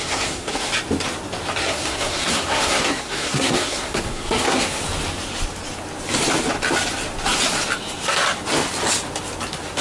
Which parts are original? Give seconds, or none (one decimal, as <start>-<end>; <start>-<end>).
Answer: 0.7-1.6; 4.8-9.8